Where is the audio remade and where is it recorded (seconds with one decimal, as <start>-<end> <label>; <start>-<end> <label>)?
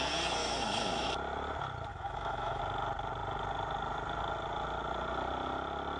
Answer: 0.0-0.4 recorded; 0.4-1.1 remade; 1.1-1.9 recorded; 1.9-2.6 remade; 2.6-6.0 recorded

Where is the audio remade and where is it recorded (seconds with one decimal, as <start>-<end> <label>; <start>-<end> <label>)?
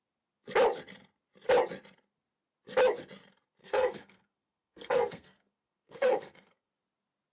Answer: 0.0-3.6 recorded; 3.6-6.7 remade; 6.7-7.3 recorded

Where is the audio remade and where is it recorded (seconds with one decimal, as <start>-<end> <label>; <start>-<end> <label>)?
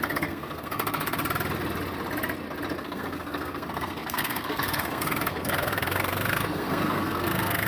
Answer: 0.0-1.2 remade; 1.2-2.8 recorded; 2.8-7.7 remade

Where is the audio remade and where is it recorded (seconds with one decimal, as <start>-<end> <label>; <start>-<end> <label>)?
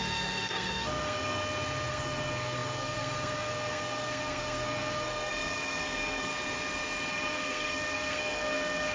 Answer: 0.0-1.4 remade; 1.4-1.9 recorded; 1.9-6.3 remade; 6.3-7.1 recorded; 7.1-8.9 remade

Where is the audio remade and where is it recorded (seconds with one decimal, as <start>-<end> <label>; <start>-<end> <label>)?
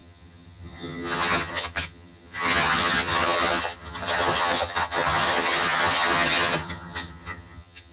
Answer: 0.0-7.9 remade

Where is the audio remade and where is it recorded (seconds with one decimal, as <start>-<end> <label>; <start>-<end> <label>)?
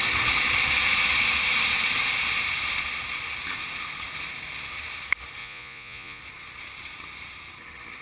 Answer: 0.0-5.4 recorded; 5.4-6.2 remade; 6.2-8.0 recorded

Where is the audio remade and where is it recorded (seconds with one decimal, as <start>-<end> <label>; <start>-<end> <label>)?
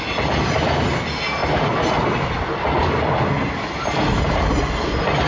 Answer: 0.0-5.3 recorded